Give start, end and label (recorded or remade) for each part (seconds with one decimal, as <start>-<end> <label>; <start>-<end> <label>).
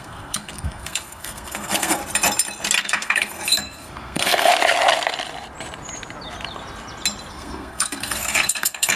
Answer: 0.0-2.0 remade; 2.0-2.8 recorded; 2.8-4.5 remade; 4.5-7.3 recorded; 7.3-9.0 remade